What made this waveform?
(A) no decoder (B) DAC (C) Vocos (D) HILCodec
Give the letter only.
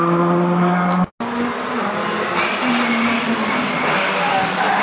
A